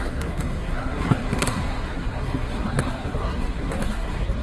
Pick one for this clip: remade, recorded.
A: remade